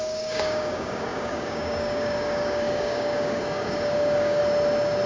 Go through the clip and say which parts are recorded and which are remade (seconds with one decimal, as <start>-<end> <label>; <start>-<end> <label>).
0.0-4.4 remade; 4.4-5.1 recorded